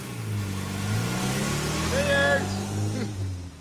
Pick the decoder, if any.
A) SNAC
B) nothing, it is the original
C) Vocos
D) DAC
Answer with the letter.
B